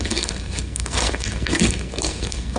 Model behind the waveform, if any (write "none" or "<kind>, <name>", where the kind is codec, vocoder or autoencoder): codec, SNAC